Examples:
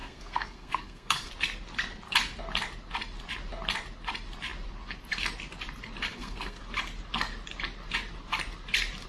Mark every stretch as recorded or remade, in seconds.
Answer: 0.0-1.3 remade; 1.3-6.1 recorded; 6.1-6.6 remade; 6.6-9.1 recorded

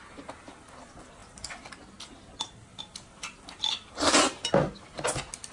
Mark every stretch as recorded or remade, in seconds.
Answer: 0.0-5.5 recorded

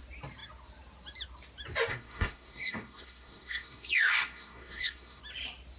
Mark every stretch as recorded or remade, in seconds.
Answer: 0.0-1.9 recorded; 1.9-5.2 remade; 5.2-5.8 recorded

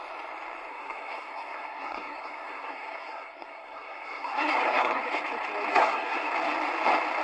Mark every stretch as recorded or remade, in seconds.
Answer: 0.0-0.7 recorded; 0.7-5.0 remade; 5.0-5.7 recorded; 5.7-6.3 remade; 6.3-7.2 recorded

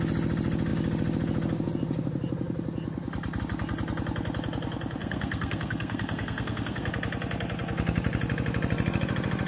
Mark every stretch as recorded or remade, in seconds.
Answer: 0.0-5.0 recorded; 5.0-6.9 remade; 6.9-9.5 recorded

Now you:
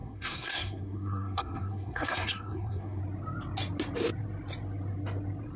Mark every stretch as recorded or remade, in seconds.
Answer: 0.0-3.0 remade; 3.0-5.6 recorded

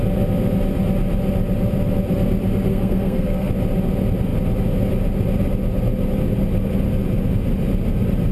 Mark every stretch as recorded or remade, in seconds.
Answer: 0.0-2.7 recorded; 2.7-3.5 remade; 3.5-8.3 recorded

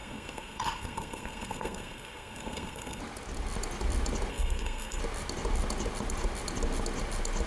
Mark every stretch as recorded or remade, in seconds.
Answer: 0.0-3.0 remade; 3.0-4.3 recorded; 4.3-5.0 remade; 5.0-7.5 recorded